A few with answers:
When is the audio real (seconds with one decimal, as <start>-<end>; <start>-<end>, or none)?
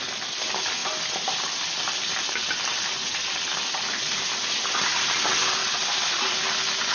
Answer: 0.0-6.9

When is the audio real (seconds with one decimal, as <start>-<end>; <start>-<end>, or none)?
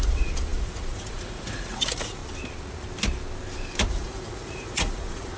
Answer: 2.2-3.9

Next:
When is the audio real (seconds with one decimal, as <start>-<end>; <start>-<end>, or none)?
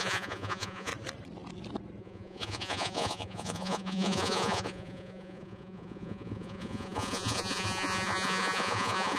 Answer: 0.9-2.0